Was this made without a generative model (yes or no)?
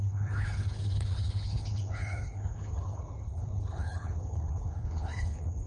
no